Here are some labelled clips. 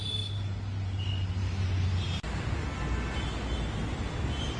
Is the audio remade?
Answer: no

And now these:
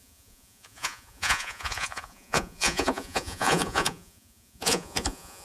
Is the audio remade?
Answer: yes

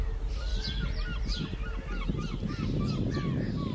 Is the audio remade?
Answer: no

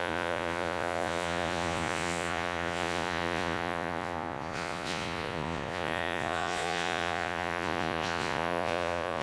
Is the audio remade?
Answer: yes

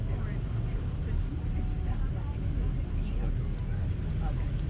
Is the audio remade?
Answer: no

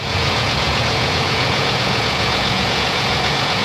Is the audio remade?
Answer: yes